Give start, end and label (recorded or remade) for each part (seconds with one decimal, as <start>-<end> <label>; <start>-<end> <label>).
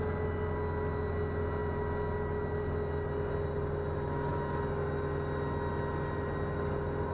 0.0-7.1 recorded